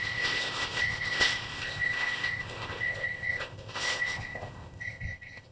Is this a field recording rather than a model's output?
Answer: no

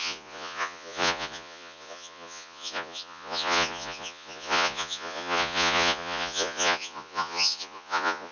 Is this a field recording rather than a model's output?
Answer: no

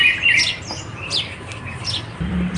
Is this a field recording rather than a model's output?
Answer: no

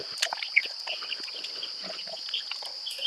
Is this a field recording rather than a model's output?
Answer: yes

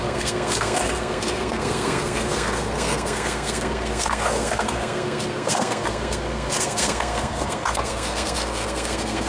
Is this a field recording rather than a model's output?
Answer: no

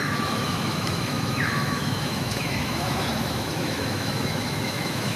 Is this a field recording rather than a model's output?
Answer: no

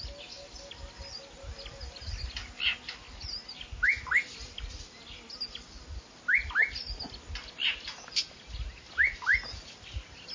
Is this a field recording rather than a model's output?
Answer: yes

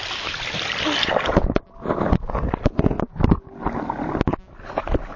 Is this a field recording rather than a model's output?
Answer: yes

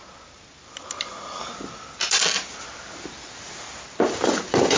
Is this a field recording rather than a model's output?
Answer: yes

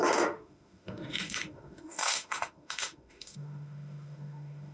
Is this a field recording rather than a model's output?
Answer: no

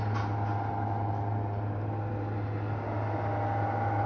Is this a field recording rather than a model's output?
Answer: yes